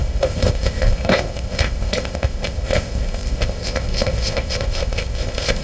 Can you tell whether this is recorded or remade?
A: remade